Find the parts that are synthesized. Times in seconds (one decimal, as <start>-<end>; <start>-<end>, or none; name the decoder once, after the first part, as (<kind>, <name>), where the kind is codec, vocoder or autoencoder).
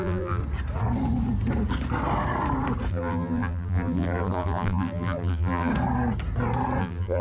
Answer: 0.0-0.4 (vocoder, BigVGAN v2); 2.9-5.7; 6.8-7.2